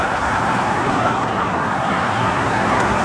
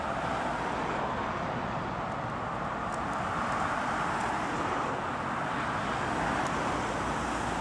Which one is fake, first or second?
first